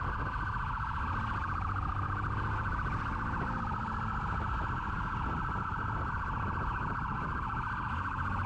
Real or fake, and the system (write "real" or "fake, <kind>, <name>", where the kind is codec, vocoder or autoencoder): real